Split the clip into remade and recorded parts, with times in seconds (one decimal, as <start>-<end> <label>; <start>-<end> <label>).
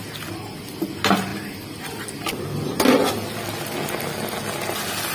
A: 0.0-5.1 recorded